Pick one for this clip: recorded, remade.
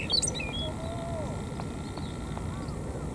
recorded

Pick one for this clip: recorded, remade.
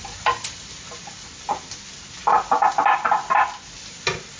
recorded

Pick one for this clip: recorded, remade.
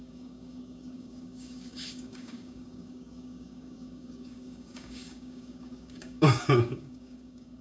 remade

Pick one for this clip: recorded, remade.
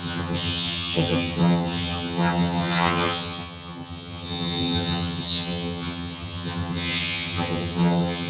remade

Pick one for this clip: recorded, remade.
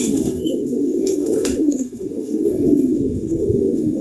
remade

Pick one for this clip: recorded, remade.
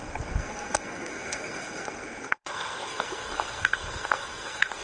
remade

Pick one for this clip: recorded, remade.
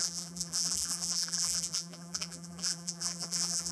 remade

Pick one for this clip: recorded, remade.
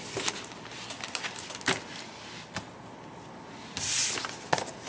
recorded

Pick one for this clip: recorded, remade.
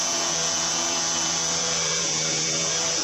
remade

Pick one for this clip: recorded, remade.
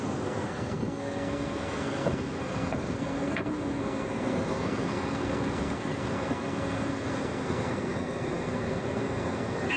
remade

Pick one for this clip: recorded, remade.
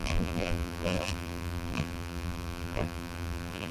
remade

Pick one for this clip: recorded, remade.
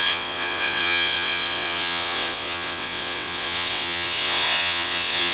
remade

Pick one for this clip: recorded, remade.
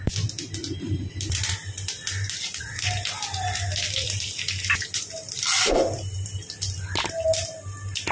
recorded